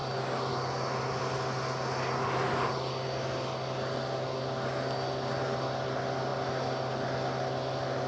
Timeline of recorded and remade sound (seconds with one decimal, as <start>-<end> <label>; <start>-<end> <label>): 0.0-8.1 recorded